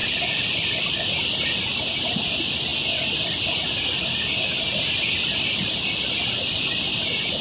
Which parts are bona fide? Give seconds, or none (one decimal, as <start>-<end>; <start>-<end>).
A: 0.0-7.4